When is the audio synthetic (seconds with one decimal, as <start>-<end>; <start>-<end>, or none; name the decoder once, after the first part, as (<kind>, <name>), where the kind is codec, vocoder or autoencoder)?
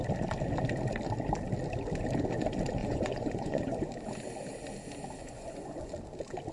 2.8-3.9 (vocoder, Vocos); 5.2-5.9